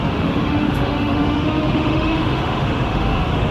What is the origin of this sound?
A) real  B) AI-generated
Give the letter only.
B